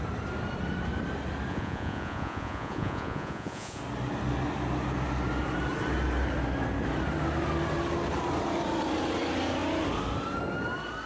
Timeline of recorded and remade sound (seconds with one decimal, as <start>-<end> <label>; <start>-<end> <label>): 0.0-1.5 recorded; 1.5-3.8 remade; 3.8-11.1 recorded